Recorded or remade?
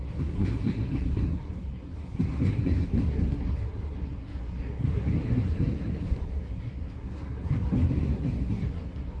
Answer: remade